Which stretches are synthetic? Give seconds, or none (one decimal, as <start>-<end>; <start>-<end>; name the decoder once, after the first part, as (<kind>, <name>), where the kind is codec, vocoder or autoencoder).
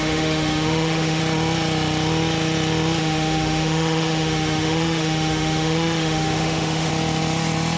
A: 0.0-1.2 (autoencoder, DAC-VAE); 3.0-6.9